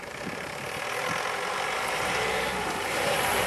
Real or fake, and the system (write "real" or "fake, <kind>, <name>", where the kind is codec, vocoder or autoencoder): fake, vocoder, BigVGAN v2